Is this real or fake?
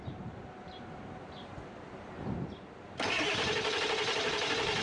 fake